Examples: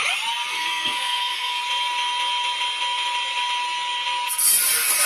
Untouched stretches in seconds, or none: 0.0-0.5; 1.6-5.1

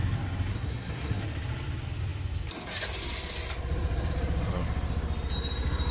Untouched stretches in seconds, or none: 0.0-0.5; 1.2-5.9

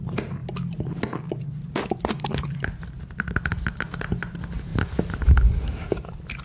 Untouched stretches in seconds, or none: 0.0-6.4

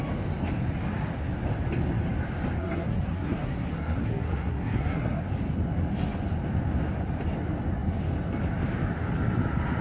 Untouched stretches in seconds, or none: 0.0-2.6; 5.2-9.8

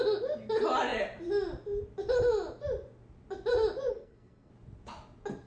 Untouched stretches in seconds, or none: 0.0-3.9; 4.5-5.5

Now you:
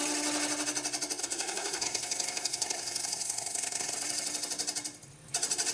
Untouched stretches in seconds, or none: 0.0-1.2; 3.9-5.7

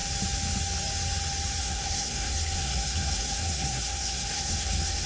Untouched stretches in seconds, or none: 0.0-1.6